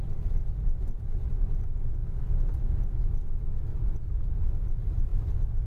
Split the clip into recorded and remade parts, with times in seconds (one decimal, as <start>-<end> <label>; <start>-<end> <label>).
0.0-5.7 remade